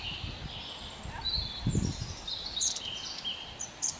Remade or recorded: recorded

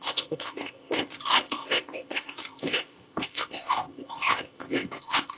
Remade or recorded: remade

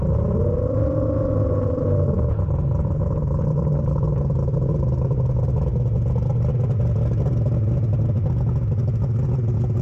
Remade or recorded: recorded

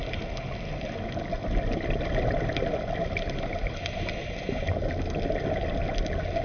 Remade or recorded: recorded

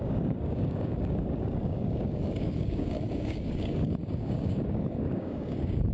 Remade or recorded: remade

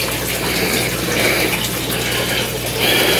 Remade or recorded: recorded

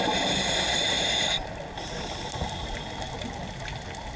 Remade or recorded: recorded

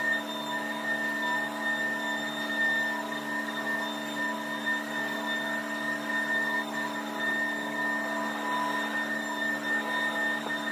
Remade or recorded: recorded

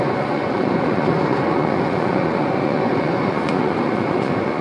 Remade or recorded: remade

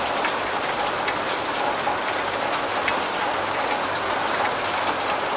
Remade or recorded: recorded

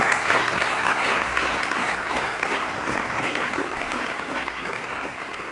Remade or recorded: remade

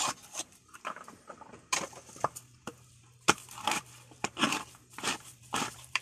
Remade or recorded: remade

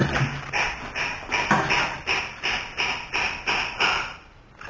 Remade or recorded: recorded